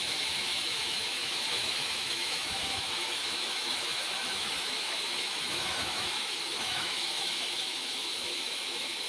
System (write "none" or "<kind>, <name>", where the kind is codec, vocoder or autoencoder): autoencoder, DAC-VAE